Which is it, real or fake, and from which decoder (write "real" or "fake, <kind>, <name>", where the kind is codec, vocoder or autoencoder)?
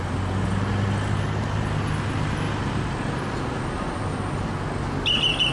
real